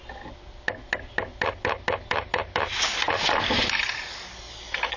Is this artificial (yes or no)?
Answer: no